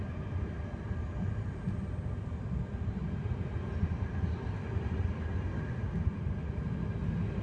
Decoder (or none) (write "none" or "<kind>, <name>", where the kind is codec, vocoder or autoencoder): none